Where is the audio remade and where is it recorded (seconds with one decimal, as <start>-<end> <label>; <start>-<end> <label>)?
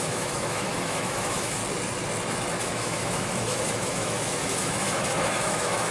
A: 0.0-1.6 remade; 1.6-2.6 recorded; 2.6-5.9 remade